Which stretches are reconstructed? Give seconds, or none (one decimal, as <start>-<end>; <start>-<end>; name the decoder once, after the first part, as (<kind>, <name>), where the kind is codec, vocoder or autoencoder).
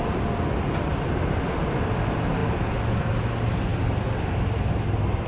none